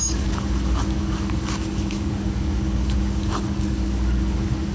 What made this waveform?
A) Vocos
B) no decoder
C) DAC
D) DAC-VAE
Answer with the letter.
C